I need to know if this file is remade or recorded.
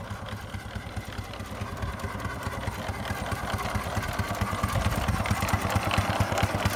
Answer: recorded